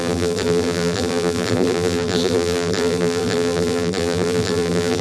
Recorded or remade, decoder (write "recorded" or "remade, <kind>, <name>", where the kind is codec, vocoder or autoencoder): remade, vocoder, BigVGAN v2